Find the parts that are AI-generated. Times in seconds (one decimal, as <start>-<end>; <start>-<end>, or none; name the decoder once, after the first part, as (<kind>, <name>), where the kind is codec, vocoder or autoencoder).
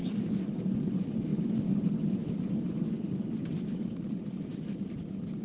none